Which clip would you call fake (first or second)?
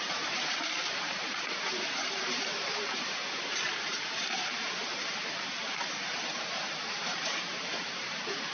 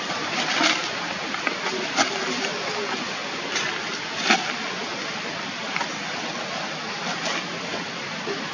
first